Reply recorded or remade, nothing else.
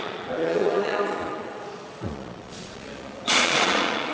remade